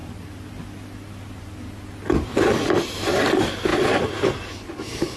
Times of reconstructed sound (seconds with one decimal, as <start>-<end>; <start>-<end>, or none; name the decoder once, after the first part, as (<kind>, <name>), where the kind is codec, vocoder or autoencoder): none